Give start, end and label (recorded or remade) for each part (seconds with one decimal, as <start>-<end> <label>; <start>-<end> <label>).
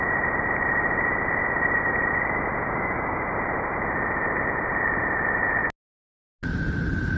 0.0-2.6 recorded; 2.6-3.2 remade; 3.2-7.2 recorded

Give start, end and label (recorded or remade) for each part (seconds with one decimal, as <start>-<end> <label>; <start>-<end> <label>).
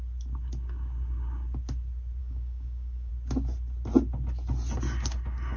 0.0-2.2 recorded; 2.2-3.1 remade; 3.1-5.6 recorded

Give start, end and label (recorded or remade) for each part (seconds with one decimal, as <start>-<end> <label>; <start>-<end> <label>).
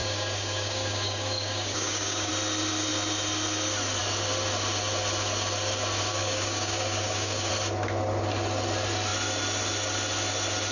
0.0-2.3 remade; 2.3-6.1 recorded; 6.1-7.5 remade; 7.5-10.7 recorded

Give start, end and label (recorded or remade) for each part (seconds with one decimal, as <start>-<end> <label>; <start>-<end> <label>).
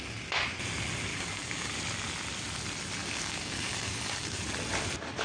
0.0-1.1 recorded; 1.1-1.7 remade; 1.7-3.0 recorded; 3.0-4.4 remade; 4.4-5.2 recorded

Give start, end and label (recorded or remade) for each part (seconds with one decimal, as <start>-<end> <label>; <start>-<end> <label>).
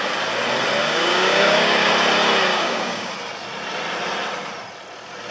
0.0-0.8 recorded; 0.8-1.9 remade; 1.9-2.5 recorded; 2.5-3.1 remade; 3.1-5.3 recorded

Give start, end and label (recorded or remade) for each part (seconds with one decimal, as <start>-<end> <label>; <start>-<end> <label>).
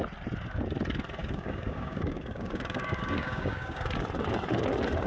0.0-1.2 recorded; 1.2-3.8 remade; 3.8-5.1 recorded